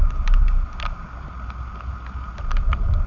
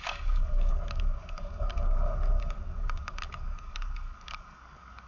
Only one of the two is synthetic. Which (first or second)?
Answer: second